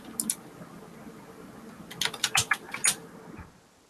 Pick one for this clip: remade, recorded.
recorded